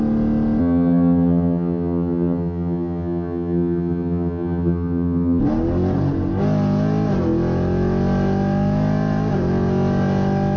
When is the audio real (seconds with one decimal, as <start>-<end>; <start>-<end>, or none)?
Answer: 0.0-0.6; 5.4-10.6